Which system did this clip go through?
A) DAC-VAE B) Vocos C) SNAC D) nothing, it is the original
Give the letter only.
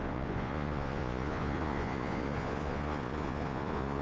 B